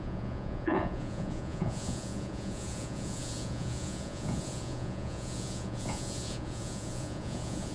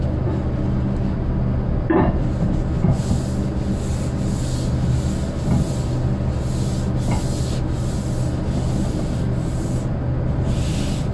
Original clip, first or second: second